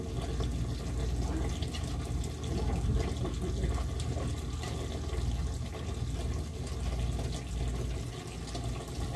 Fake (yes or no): no